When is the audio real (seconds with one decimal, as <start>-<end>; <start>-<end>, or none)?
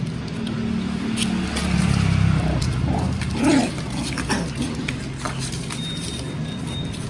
0.0-1.6; 3.7-7.1